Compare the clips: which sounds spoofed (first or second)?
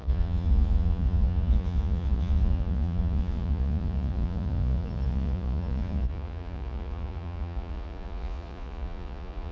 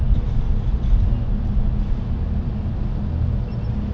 first